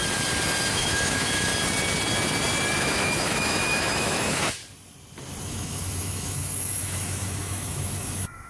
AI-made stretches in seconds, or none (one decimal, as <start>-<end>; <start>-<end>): 0.7-1.5; 2.8-4.6; 5.4-8.5